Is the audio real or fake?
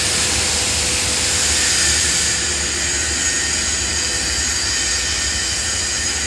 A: real